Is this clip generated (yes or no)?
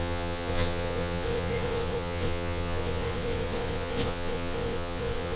yes